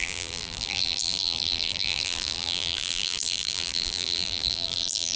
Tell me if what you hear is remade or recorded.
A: remade